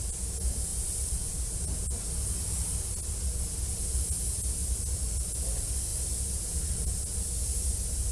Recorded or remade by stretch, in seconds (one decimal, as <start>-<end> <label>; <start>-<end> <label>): 0.0-0.7 recorded; 0.7-2.1 remade; 2.1-8.1 recorded